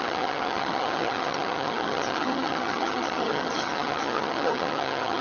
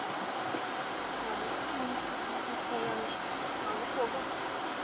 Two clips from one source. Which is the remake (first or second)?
first